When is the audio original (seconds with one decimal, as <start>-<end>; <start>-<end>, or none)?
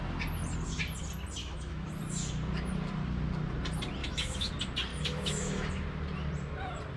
0.0-1.4; 2.0-4.0; 4.5-4.9; 5.7-7.0